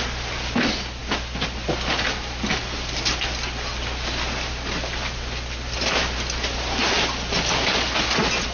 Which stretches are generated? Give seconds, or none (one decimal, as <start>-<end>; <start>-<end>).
none